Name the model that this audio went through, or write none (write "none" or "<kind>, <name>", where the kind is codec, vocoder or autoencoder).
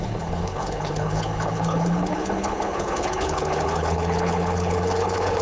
codec, HILCodec